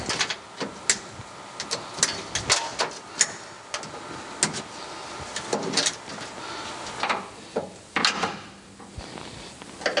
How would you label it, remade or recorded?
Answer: recorded